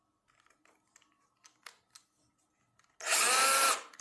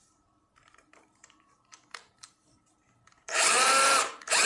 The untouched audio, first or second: first